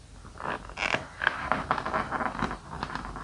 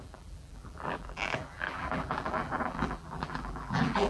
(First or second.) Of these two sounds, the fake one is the second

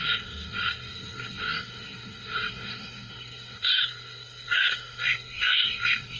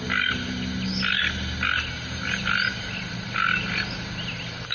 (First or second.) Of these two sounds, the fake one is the first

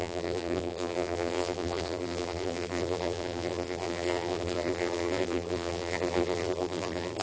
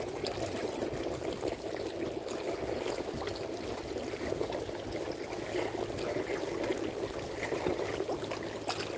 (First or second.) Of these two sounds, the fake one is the first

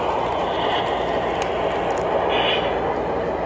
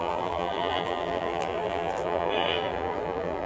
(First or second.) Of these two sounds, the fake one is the second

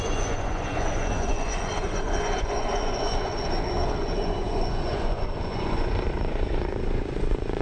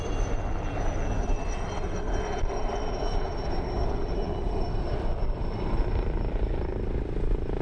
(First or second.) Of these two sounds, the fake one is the first